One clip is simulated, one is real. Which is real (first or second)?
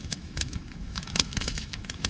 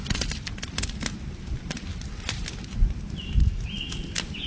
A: second